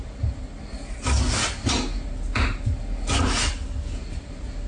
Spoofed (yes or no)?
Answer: no